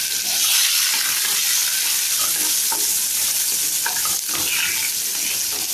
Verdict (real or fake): real